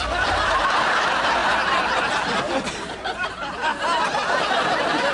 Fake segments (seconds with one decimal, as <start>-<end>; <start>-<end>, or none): 0.0-1.4; 2.7-3.7; 4.4-5.1